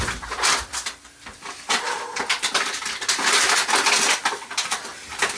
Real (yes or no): yes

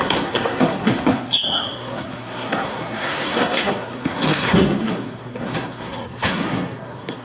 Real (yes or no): no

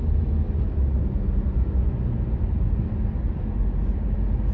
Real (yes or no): yes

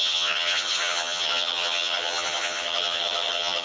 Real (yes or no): no